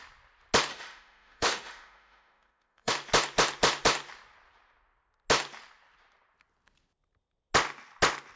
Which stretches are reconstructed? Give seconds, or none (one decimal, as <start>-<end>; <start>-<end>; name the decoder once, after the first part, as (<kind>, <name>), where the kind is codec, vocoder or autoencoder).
0.7-2.9 (autoencoder, DAC-VAE)